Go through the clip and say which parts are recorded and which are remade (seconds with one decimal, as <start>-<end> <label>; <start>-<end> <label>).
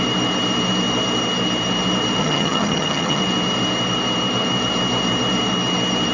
0.0-2.2 recorded; 2.2-3.2 remade; 3.2-6.1 recorded